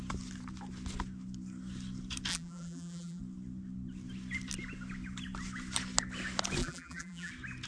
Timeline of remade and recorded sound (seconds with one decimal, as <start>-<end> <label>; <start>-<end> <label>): 0.0-2.3 recorded; 2.3-3.2 remade; 3.2-6.6 recorded; 6.6-7.3 remade; 7.3-7.7 recorded